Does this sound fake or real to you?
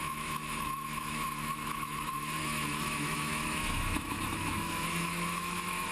fake